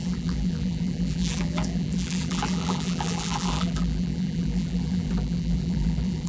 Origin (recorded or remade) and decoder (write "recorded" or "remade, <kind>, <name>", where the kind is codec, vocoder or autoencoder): remade, vocoder, BigVGAN v2